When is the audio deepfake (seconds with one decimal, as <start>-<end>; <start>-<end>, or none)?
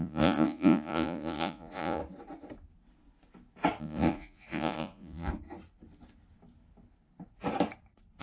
0.0-2.0; 3.8-5.3